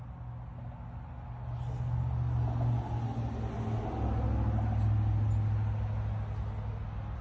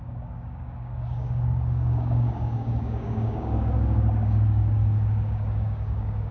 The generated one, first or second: second